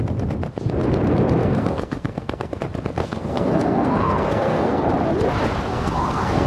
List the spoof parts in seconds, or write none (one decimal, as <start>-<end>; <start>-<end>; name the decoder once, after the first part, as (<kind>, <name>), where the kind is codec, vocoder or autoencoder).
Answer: 1.4-2.6 (codec, SNAC); 3.0-4.9; 5.7-6.5